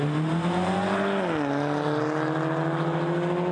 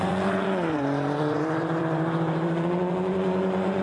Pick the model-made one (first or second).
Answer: second